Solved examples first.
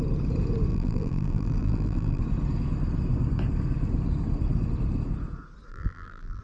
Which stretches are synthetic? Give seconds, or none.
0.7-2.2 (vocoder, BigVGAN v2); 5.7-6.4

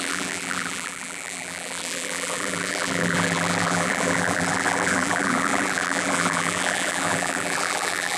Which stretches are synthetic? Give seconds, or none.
0.0-8.2 (vocoder, BigVGAN v2)

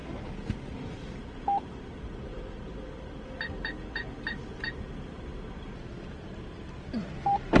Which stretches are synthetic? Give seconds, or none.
2.3-2.9 (vocoder, BigVGAN v2)

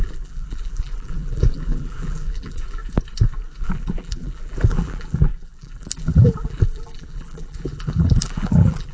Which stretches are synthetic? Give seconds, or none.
0.0-2.8 (vocoder, BigVGAN v2); 3.6-8.9